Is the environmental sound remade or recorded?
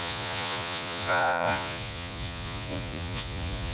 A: remade